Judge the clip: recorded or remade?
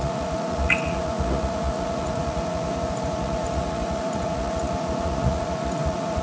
remade